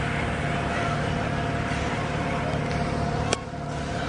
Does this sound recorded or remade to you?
recorded